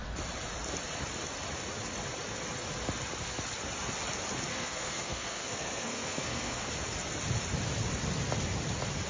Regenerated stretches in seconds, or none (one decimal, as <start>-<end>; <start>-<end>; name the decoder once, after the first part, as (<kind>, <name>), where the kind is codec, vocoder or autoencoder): 4.5-6.7 (codec, SNAC)